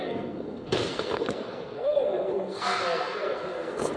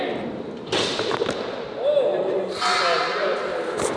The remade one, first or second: first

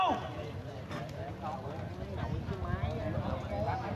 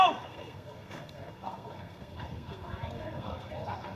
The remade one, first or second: second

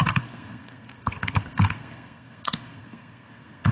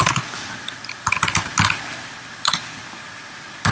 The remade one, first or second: first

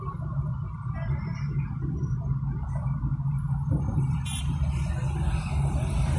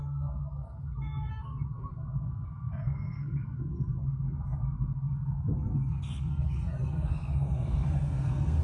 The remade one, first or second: second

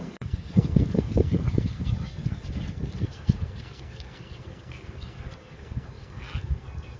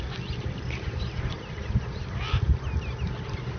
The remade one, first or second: first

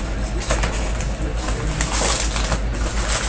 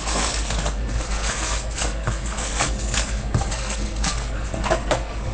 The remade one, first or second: second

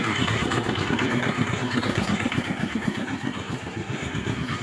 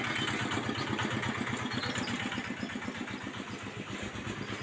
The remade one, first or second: first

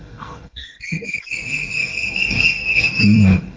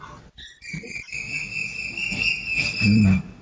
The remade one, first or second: first